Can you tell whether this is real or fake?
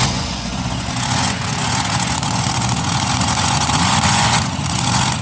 fake